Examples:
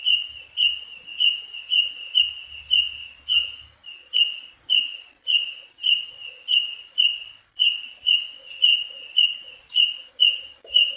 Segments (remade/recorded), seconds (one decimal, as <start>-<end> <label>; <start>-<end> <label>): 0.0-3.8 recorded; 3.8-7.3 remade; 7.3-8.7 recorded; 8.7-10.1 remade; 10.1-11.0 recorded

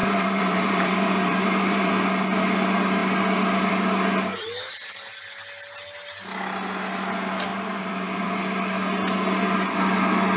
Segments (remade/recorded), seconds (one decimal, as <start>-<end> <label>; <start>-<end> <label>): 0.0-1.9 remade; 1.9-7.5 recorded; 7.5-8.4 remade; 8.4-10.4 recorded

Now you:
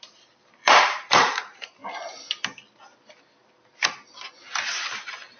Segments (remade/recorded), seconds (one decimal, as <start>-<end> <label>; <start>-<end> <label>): 0.0-1.8 remade; 1.8-4.9 recorded; 4.9-5.4 remade

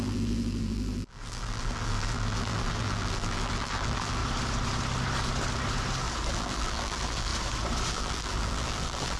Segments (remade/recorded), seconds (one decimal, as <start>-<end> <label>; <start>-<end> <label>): 0.0-4.2 remade; 4.2-6.3 recorded; 6.3-7.3 remade; 7.3-7.9 recorded; 7.9-9.2 remade

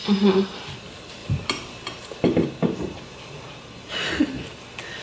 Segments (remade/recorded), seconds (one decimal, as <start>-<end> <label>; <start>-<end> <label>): 0.0-1.2 recorded; 1.2-4.2 remade; 4.2-5.0 recorded